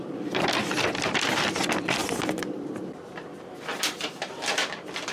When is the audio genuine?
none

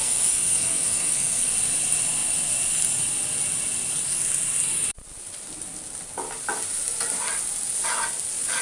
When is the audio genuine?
1.5-8.6

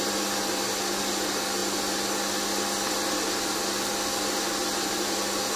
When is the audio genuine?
0.0-5.6

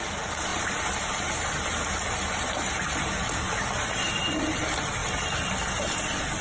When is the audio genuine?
0.0-6.4